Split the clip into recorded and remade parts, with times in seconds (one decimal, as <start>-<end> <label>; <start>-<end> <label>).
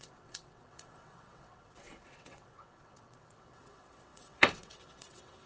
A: 0.0-5.5 remade